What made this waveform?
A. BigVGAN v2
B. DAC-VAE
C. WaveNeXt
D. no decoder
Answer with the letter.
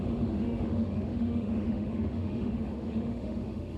B